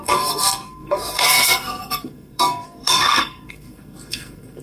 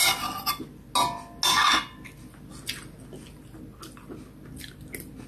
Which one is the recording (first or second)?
second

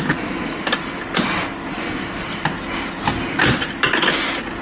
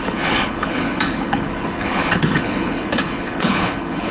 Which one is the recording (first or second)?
first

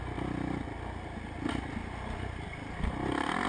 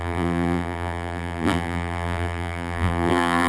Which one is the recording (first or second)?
first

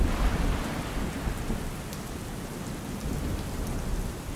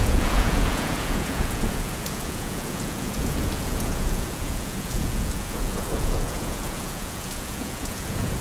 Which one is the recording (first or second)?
first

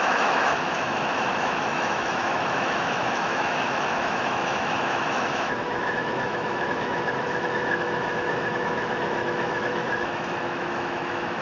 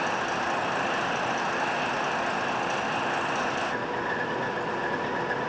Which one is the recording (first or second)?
second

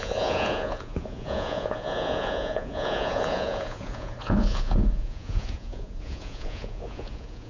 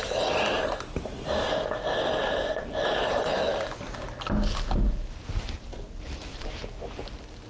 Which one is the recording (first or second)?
second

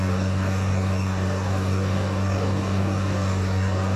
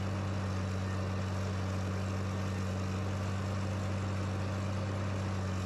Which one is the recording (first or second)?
second